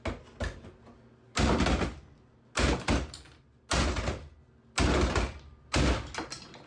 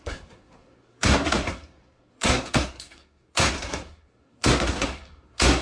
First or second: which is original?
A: first